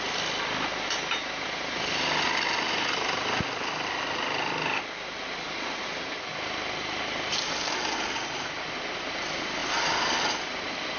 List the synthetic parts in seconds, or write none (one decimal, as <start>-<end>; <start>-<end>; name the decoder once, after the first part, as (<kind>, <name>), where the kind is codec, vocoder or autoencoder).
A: none